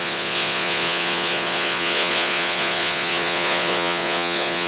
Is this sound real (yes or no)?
no